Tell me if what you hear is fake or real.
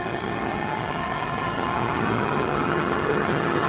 fake